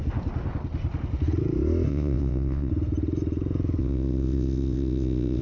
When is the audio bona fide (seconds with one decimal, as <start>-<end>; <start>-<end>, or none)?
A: 0.0-1.9; 2.7-3.8